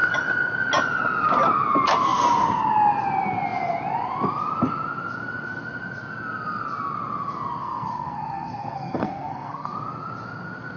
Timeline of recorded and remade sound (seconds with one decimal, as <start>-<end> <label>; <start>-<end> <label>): 0.0-7.6 recorded; 7.6-9.7 remade; 9.7-10.8 recorded